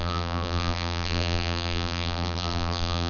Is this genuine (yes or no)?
no